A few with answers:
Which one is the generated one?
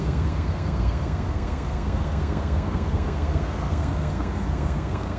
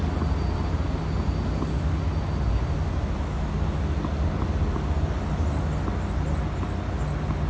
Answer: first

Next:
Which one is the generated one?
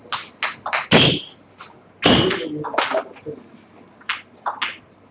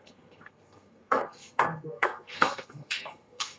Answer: second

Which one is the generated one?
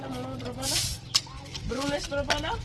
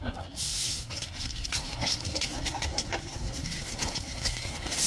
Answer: second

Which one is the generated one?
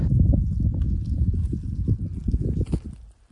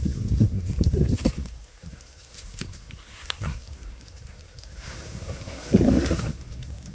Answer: second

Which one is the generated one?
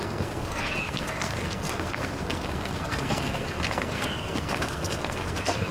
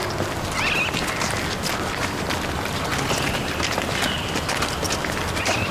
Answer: first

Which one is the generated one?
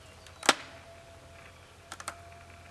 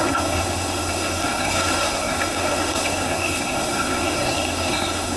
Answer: second